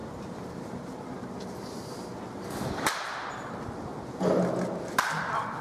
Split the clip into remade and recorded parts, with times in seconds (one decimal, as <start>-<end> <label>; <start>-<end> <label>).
0.0-5.6 recorded

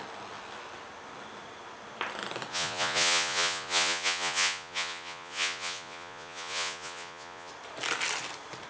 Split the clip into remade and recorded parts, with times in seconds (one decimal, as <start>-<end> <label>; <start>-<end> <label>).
0.0-2.5 recorded; 2.5-7.5 remade; 7.5-8.7 recorded

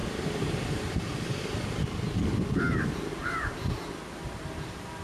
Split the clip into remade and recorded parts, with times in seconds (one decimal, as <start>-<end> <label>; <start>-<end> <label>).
0.0-1.1 remade; 1.1-3.1 recorded; 3.1-3.9 remade; 3.9-5.0 recorded